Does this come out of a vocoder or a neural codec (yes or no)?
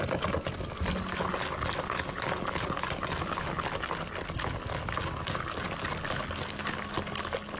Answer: no